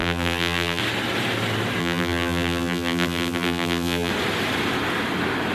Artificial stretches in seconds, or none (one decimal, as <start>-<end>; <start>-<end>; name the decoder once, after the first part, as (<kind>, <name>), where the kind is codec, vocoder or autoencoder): 0.0-0.8 (vocoder, BigVGAN v2); 1.8-4.1